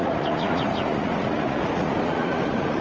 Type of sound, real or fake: fake